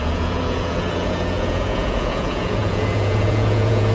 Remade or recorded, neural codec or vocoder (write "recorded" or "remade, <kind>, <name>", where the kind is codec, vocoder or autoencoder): remade, vocoder, Vocos